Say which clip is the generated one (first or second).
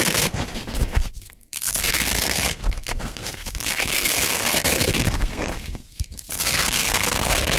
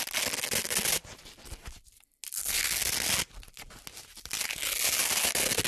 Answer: first